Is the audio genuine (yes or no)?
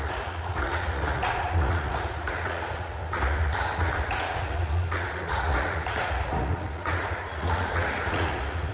no